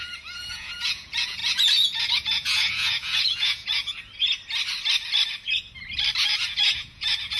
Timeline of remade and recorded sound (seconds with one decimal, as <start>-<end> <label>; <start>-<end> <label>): 0.0-3.8 remade; 3.8-6.2 recorded; 6.2-7.4 remade